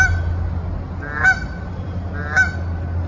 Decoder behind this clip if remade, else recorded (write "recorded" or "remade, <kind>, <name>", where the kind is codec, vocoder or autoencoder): recorded